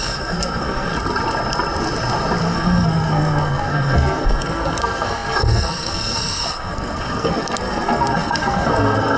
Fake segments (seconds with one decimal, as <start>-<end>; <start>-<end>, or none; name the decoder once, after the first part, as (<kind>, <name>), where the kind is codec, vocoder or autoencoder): 0.0-0.9 (codec, SNAC); 2.4-9.2